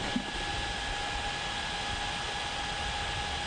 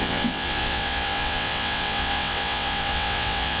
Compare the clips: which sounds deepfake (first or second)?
second